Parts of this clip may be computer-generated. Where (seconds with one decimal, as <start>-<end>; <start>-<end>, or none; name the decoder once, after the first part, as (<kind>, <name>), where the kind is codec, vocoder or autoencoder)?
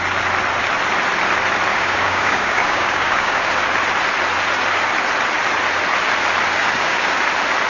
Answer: 1.7-3.5 (codec, DAC); 6.6-7.2